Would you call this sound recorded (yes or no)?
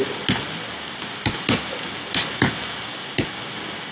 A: yes